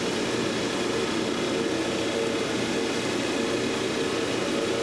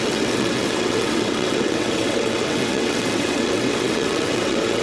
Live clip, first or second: first